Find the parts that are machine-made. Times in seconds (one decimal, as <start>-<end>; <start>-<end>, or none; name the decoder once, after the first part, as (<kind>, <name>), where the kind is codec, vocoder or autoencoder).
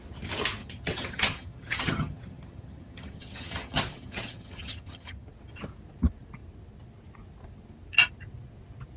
0.6-5.3 (vocoder, HiFi-GAN)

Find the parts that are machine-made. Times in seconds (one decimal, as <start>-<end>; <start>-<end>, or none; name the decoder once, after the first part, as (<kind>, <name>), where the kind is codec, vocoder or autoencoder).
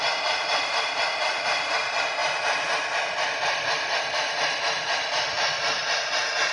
none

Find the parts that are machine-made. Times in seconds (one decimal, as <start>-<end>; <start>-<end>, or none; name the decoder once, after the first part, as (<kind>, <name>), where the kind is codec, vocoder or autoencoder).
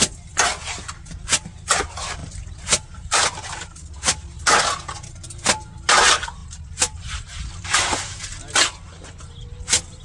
none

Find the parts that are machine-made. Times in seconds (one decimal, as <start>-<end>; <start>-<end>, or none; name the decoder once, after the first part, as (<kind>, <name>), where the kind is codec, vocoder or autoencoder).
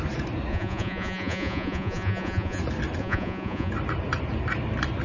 0.5-2.6 (vocoder, Vocos); 3.0-3.7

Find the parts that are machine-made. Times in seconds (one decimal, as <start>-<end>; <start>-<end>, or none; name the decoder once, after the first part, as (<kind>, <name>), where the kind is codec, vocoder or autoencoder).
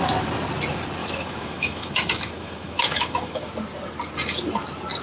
1.0-3.5 (autoencoder, DAC-VAE)